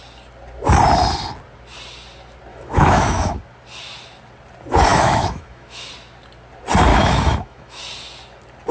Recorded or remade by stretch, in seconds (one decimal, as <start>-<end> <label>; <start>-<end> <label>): 0.0-2.5 recorded; 2.5-3.4 remade; 3.4-4.9 recorded; 4.9-5.9 remade; 5.9-6.9 recorded; 6.9-7.8 remade; 7.8-8.7 recorded